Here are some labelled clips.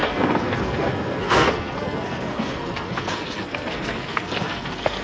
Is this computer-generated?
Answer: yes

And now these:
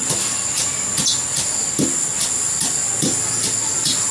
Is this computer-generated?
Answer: no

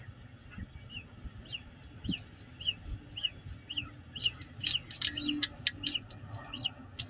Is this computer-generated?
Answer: no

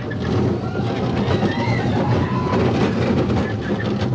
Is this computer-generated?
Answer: no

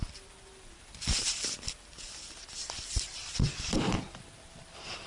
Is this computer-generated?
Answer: yes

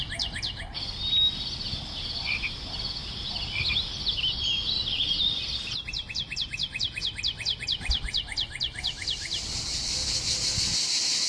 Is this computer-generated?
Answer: no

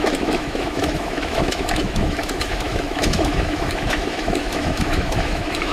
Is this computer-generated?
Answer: yes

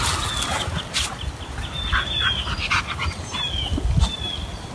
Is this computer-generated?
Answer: no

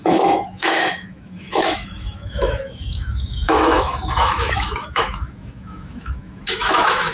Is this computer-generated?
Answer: yes